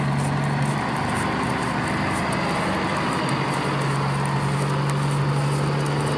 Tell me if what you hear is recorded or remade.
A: recorded